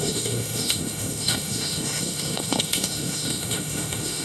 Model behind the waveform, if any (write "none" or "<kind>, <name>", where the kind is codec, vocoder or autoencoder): autoencoder, DAC-VAE